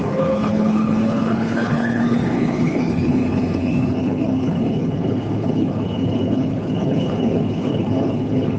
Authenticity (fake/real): fake